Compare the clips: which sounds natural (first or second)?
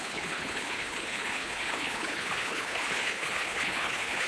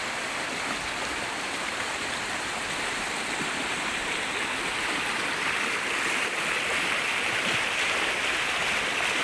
second